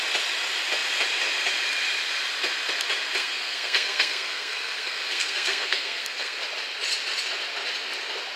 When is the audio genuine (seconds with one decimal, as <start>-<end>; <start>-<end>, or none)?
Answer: 0.0-3.2; 6.4-8.4